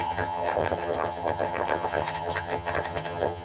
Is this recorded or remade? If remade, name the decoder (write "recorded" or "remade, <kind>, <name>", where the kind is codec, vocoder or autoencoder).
remade, vocoder, HiFi-GAN